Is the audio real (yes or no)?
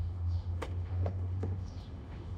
no